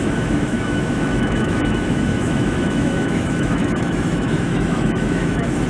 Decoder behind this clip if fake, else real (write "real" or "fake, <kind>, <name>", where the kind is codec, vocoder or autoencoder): fake, autoencoder, DAC-VAE